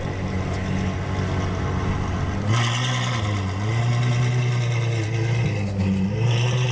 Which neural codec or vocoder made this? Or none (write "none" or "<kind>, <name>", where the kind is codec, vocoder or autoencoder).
none